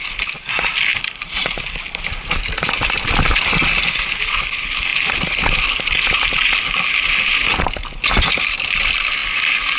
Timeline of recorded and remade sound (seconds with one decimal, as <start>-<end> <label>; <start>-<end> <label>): 0.0-9.8 recorded